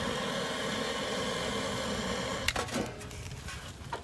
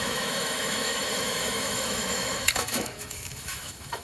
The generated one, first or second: second